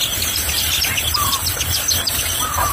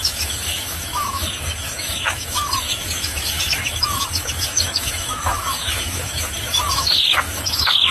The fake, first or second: second